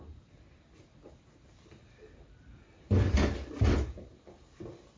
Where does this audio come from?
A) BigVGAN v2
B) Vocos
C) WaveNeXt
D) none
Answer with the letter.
A